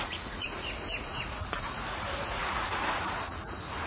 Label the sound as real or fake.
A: fake